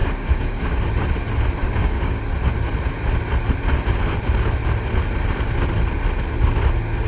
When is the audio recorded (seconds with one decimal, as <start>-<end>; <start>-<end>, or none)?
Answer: 0.7-1.6; 2.2-7.1